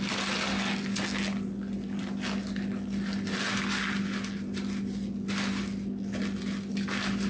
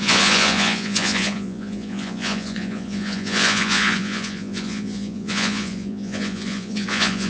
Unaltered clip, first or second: first